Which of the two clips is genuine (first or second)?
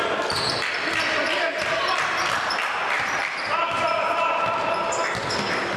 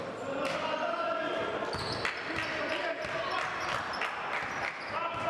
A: second